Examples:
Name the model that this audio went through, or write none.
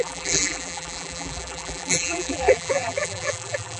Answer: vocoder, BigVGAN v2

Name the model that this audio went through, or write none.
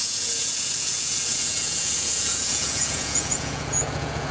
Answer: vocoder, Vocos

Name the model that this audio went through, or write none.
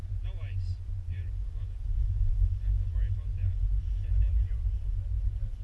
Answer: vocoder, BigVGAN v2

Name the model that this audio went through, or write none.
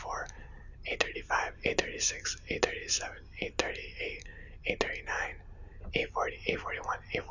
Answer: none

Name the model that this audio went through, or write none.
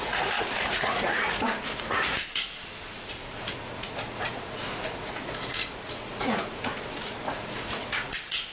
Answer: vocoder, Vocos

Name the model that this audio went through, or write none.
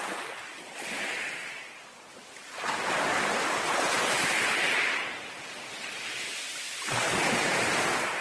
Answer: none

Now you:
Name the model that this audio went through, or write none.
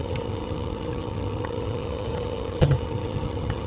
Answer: vocoder, HiFi-GAN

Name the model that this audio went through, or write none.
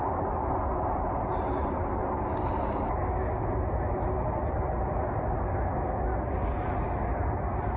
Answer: none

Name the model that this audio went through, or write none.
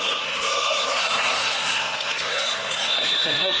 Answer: codec, SNAC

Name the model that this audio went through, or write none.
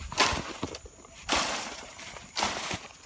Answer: none